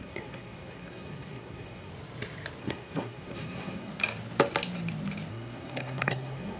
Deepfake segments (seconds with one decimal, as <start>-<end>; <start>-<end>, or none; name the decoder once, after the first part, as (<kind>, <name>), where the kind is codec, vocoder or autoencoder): 0.0-1.9 (codec, SNAC); 2.6-3.9; 5.3-6.6